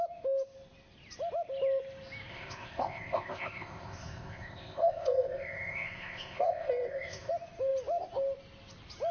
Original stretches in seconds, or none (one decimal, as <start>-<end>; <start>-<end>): 0.0-2.3; 7.3-9.1